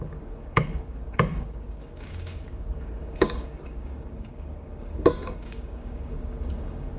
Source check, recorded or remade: remade